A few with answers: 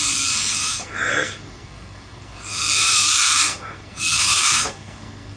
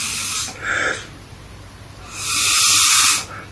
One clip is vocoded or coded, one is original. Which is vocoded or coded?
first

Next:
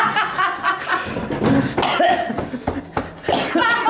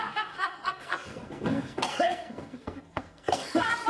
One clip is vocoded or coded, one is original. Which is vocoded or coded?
second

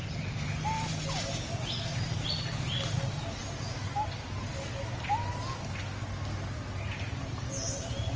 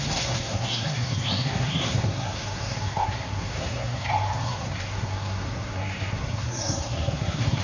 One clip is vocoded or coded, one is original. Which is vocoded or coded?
second